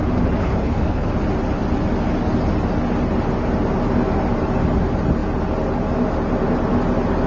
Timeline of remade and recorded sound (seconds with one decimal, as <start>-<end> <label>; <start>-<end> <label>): 0.0-0.4 recorded; 0.4-1.1 remade; 1.1-7.3 recorded